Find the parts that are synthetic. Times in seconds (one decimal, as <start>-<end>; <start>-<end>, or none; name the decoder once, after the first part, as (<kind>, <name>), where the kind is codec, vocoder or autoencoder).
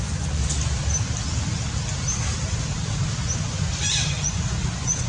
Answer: 0.0-0.4 (vocoder, Vocos); 3.5-5.1